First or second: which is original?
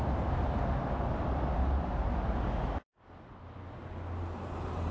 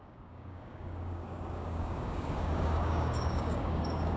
first